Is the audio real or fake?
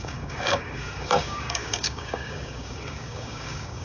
fake